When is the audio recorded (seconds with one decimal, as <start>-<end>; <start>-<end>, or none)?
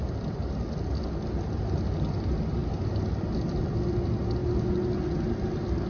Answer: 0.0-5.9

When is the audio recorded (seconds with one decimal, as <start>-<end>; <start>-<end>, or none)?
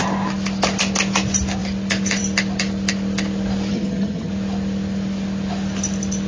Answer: 0.0-3.7; 4.3-6.3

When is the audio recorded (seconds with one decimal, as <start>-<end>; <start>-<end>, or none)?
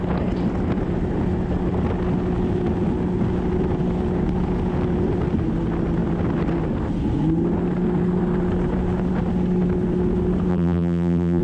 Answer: 0.0-10.5